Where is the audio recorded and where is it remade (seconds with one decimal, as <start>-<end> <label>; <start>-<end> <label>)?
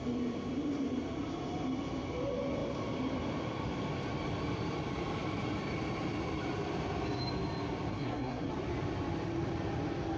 0.0-7.9 recorded; 7.9-8.5 remade; 8.5-10.2 recorded